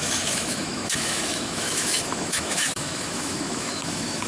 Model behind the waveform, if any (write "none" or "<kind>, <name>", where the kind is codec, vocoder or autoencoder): autoencoder, DAC-VAE